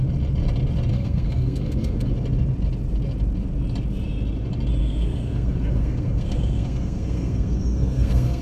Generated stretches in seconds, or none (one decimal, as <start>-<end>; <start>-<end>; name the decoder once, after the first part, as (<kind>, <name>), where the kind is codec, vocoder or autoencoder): 0.9-2.1 (codec, SNAC); 4.8-8.4